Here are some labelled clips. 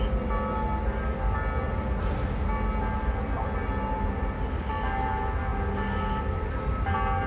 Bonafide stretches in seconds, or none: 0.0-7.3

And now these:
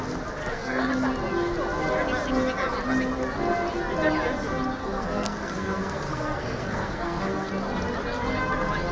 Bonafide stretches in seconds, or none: 0.0-0.4; 0.9-4.8; 7.5-8.9